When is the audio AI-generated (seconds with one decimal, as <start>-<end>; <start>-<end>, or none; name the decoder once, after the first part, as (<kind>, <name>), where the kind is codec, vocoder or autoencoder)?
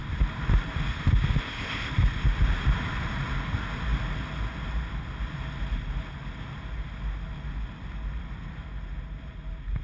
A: 1.4-1.9 (codec, ZipCodec)